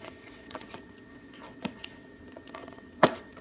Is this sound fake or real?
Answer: fake